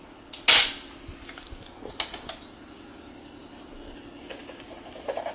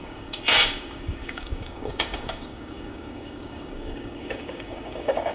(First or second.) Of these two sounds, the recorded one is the first